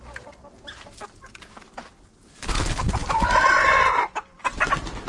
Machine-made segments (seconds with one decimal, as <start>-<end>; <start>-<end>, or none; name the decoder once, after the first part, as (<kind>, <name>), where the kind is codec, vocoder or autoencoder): none